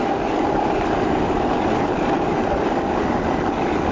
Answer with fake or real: fake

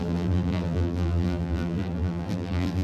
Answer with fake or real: fake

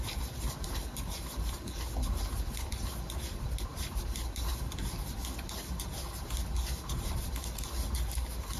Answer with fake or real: real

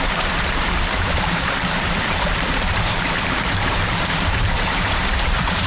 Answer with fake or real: fake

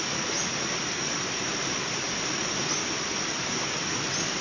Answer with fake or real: fake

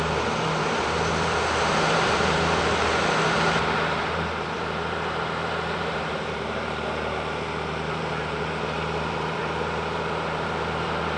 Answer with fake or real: fake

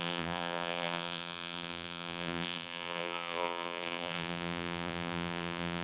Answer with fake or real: fake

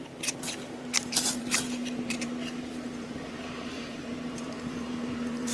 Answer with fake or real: fake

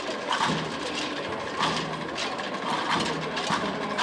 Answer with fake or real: real